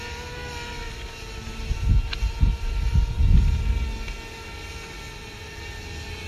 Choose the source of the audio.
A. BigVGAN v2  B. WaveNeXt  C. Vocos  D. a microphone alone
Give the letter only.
D